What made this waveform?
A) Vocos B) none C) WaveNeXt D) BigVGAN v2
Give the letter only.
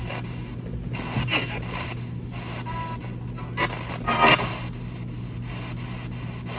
B